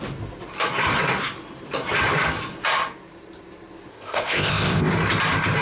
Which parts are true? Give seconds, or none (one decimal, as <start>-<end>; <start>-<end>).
0.0-3.9; 4.9-5.6